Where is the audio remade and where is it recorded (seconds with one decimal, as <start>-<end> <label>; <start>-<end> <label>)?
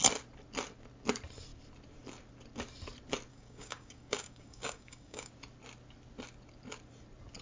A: 0.0-3.3 recorded; 3.3-5.3 remade; 5.3-7.4 recorded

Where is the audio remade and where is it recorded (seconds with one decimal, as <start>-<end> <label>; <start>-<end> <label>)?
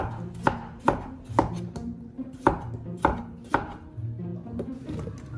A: 0.0-5.4 recorded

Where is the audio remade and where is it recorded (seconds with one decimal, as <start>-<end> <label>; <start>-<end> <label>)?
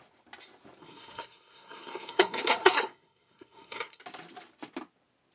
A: 0.0-0.8 recorded; 0.8-4.0 remade; 4.0-5.3 recorded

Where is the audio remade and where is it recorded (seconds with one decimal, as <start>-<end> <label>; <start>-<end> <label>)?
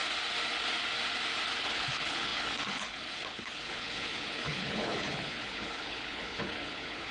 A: 0.0-1.6 recorded; 1.6-7.1 remade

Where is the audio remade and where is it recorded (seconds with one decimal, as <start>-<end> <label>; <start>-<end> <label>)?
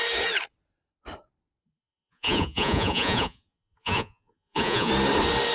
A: 0.0-1.6 recorded; 1.6-4.9 remade; 4.9-5.5 recorded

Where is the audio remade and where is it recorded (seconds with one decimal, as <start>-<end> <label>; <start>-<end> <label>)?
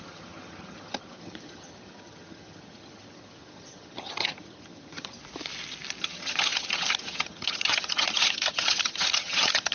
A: 0.0-5.2 remade; 5.2-6.0 recorded; 6.0-9.7 remade